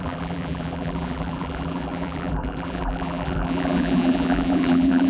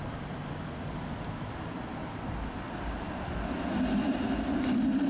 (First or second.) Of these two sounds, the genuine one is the second